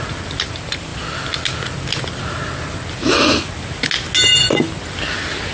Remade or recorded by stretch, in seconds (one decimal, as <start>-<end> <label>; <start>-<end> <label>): 0.0-5.5 recorded